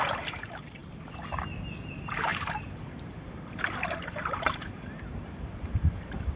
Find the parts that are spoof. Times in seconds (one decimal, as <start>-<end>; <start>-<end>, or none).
0.0-0.8; 1.9-6.4